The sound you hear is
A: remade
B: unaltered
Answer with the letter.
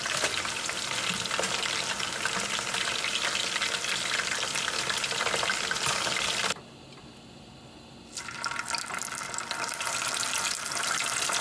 B